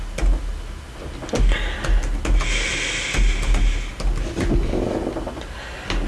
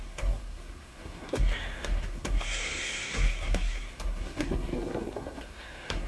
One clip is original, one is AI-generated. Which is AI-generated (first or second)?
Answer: second